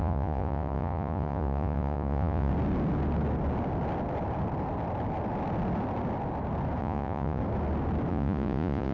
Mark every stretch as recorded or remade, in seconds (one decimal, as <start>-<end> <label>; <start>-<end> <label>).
0.0-2.5 remade; 2.5-6.8 recorded; 6.8-7.4 remade; 7.4-8.1 recorded; 8.1-8.9 remade